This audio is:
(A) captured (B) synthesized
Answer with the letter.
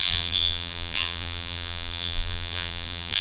B